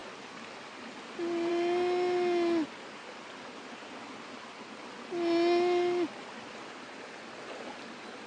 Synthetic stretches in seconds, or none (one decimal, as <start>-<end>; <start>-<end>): none